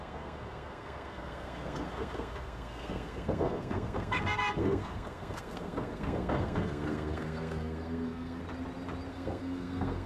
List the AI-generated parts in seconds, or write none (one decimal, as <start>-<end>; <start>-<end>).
0.0-8.4; 9.1-10.1